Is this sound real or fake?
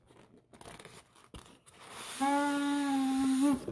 real